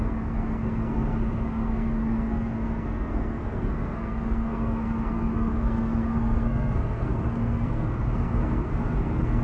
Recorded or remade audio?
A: remade